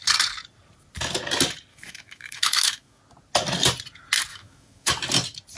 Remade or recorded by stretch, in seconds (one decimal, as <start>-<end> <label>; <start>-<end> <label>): 0.0-1.7 recorded; 1.7-3.0 remade; 3.0-4.3 recorded; 4.3-4.9 remade; 4.9-5.6 recorded